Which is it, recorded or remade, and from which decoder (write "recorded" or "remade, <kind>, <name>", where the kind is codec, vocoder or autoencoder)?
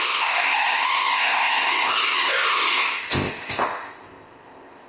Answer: remade, codec, ZipCodec